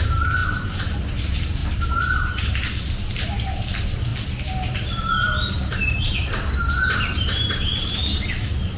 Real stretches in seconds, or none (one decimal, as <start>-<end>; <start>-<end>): 4.1-5.5